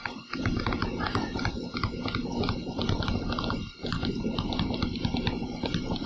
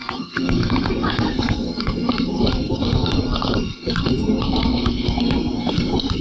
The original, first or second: first